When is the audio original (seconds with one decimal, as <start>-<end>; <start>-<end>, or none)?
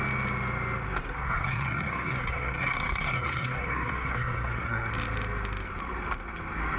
0.0-1.0; 4.9-6.8